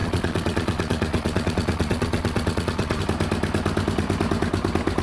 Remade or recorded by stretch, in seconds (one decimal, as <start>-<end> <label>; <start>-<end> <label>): 0.0-3.0 remade; 3.0-5.0 recorded